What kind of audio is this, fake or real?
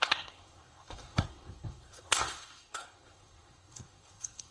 fake